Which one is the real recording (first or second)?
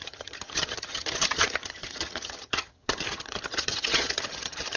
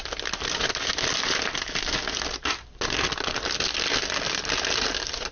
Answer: second